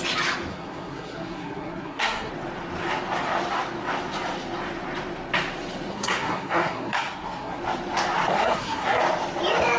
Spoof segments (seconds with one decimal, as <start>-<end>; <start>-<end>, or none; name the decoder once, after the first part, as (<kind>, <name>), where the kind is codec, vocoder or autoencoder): 0.5-2.3 (codec, SNAC); 5.9-7.6; 8.3-9.0